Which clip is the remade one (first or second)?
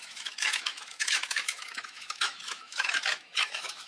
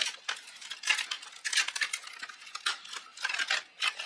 first